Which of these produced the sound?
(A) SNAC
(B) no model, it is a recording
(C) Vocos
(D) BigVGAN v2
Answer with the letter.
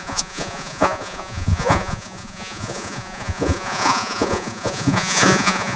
C